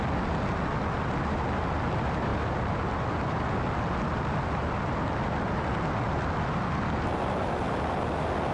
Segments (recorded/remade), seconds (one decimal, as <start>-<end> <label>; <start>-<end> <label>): 0.0-8.5 recorded